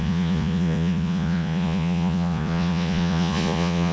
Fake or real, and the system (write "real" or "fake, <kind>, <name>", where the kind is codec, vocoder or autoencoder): fake, vocoder, Vocos